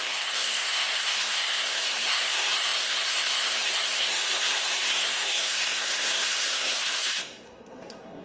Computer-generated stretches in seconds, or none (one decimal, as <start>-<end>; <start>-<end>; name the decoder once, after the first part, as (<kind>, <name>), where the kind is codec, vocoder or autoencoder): 0.0-8.2 (codec, SNAC)